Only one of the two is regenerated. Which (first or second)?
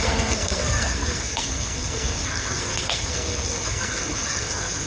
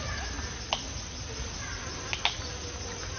first